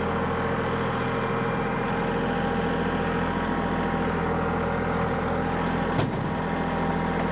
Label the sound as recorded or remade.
recorded